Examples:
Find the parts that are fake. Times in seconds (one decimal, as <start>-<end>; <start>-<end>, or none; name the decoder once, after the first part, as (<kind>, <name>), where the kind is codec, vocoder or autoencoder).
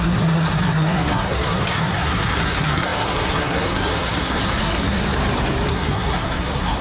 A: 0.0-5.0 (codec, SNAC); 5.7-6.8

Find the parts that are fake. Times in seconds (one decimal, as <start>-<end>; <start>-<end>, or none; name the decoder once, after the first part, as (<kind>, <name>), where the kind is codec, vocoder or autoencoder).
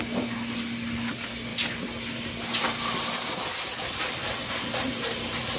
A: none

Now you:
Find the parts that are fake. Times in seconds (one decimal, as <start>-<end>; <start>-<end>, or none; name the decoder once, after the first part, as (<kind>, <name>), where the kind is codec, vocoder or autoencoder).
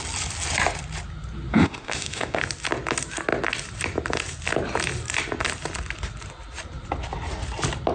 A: 1.5-2.4 (autoencoder, DAC-VAE)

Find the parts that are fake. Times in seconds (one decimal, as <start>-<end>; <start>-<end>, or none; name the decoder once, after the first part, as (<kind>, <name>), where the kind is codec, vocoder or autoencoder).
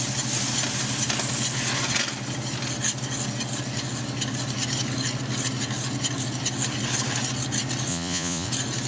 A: 7.9-8.5 (vocoder, Vocos)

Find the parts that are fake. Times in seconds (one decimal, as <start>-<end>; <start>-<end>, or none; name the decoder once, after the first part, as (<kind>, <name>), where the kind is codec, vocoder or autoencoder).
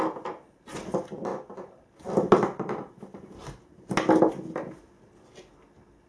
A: 2.8-3.9 (vocoder, BigVGAN v2)